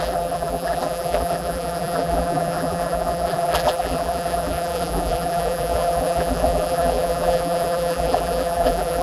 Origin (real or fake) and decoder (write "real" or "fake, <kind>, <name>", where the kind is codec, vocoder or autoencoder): fake, vocoder, BigVGAN v2